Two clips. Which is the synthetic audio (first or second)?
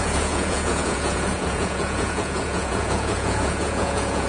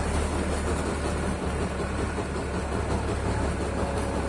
first